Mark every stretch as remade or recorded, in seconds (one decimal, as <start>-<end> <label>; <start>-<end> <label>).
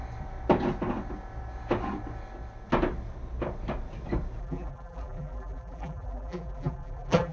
0.0-4.4 recorded; 4.4-7.3 remade